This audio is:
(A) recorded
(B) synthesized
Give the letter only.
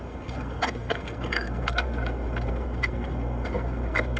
B